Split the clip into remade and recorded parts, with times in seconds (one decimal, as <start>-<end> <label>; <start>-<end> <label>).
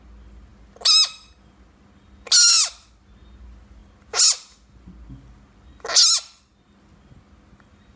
0.0-8.0 recorded